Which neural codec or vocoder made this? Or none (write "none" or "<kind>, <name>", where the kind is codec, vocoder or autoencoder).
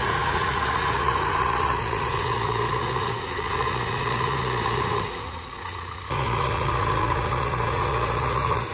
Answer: vocoder, Vocos